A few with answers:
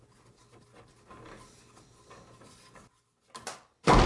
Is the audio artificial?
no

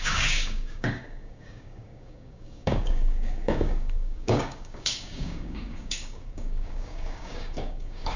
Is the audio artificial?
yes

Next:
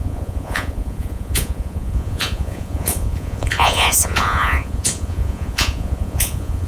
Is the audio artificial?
yes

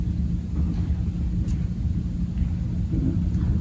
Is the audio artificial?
no